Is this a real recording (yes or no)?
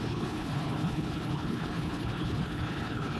no